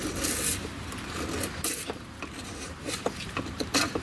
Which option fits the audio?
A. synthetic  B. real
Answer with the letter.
B